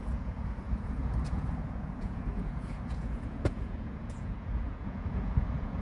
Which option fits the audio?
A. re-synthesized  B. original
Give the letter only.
A